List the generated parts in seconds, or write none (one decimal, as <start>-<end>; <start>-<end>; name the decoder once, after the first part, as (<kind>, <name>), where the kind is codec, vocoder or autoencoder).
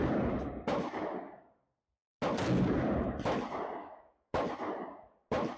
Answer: 3.8-4.4 (autoencoder, DAC-VAE)